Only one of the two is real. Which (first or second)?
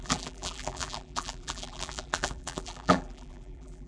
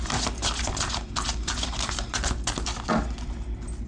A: second